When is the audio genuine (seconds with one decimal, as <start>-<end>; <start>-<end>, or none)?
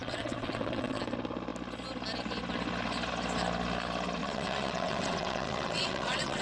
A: 1.0-4.2